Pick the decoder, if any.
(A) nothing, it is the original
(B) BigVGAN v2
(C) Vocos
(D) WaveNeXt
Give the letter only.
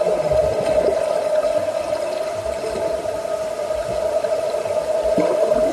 A